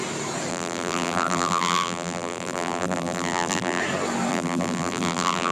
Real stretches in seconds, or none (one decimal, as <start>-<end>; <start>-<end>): 0.0-0.5; 3.8-4.3